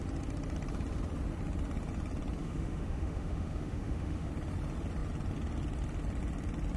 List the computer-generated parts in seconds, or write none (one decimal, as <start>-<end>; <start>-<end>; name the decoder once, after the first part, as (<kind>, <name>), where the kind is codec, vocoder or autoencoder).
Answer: 2.4-4.3 (autoencoder, DAC-VAE)